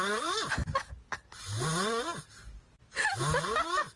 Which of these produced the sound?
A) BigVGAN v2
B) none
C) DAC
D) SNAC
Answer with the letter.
B